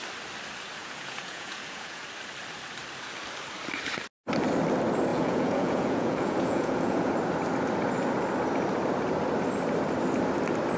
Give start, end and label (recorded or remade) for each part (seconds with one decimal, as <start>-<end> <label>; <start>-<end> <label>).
0.0-0.8 recorded; 0.8-2.0 remade; 2.0-5.1 recorded; 5.1-7.1 remade; 7.1-10.8 recorded

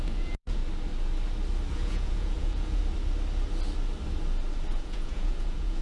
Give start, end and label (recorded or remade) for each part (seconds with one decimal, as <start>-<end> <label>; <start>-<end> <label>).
0.0-0.6 remade; 0.6-1.7 recorded; 1.7-2.8 remade; 2.8-4.7 recorded; 4.7-5.8 remade

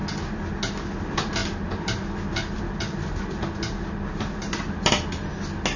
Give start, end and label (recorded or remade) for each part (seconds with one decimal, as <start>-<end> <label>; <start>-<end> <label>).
0.0-5.8 recorded

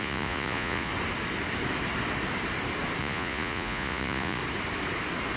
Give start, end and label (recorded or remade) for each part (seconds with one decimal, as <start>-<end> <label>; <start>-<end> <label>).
0.0-0.9 remade; 0.9-3.0 recorded; 3.0-4.4 remade; 4.4-5.4 recorded

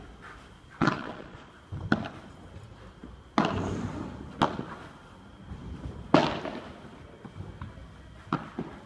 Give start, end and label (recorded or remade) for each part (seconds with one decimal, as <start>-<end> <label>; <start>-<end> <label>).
0.0-0.8 recorded; 0.8-1.5 remade; 1.5-8.9 recorded

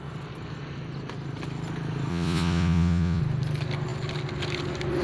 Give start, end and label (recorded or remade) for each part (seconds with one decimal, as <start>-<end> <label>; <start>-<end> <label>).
0.0-2.1 recorded; 2.1-3.2 remade; 3.2-5.0 recorded

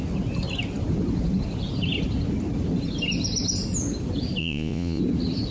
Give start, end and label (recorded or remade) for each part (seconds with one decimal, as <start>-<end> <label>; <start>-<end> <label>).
0.0-4.4 recorded; 4.4-5.0 remade; 5.0-5.5 recorded

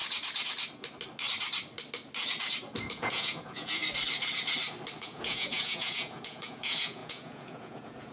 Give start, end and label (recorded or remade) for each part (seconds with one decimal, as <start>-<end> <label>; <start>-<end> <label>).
0.0-2.8 recorded; 2.8-3.8 remade; 3.8-5.0 recorded; 5.0-8.1 remade